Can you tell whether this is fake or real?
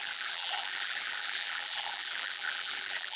fake